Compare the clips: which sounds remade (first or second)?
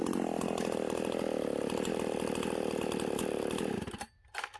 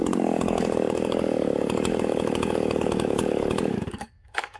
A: second